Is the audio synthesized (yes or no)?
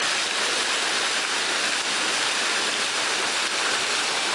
no